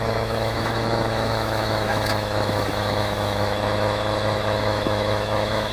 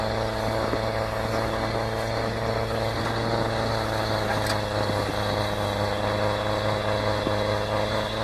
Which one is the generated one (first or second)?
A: first